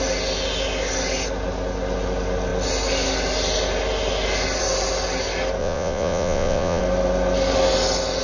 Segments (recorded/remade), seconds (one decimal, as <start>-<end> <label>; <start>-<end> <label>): 0.0-5.6 recorded; 5.6-6.8 remade; 6.8-8.2 recorded